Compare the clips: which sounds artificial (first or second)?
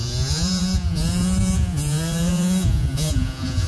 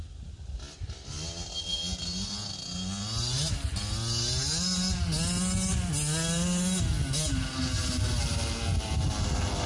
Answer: first